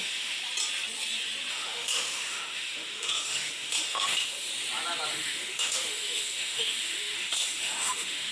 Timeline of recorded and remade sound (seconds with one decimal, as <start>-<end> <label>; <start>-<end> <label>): 0.0-0.4 remade; 0.4-1.5 recorded; 1.5-4.5 remade; 4.5-5.1 recorded; 5.1-8.3 remade